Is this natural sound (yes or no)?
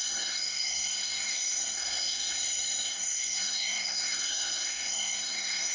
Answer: no